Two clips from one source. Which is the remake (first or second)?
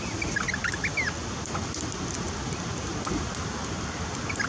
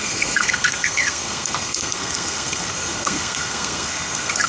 second